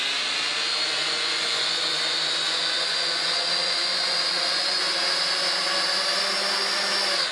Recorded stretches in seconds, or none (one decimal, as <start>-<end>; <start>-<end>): 0.0-1.0; 4.8-7.3